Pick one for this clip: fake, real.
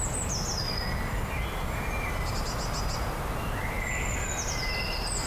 real